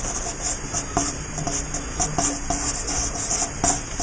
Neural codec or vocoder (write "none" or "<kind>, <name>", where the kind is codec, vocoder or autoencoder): none